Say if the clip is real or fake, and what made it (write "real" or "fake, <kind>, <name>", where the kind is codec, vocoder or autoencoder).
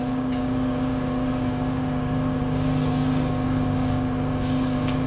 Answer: fake, codec, DAC